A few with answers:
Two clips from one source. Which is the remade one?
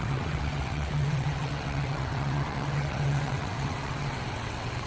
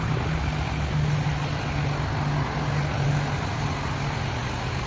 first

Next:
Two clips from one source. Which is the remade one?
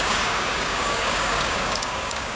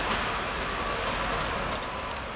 first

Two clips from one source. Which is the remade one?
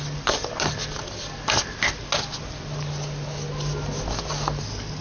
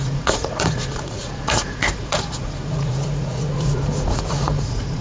second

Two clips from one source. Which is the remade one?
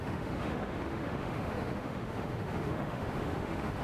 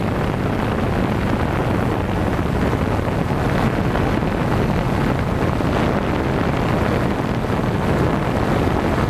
first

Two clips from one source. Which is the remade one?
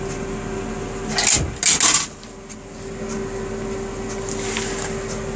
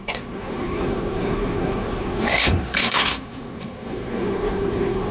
second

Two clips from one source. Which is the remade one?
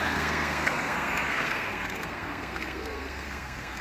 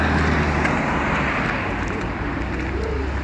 first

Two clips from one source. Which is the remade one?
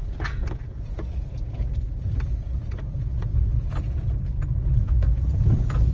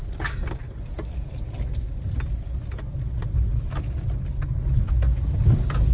first